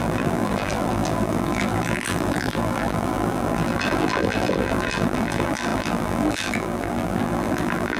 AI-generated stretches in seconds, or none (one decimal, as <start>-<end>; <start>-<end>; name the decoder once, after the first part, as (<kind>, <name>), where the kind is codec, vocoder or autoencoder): 0.0-8.0 (vocoder, BigVGAN v2)